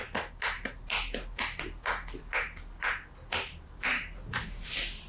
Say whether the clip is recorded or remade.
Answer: recorded